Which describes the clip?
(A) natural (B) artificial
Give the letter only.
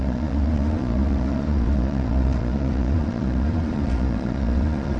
B